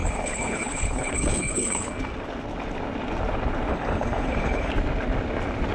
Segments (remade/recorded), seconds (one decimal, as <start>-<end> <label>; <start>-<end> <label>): 0.0-1.9 remade; 1.9-3.7 recorded; 3.7-4.7 remade; 4.7-5.7 recorded